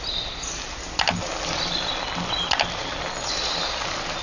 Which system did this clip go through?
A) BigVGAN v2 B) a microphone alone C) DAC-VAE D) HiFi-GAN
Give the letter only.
B